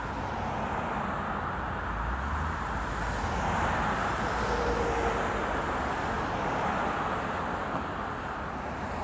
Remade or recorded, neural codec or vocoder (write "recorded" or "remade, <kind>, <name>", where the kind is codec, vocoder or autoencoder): recorded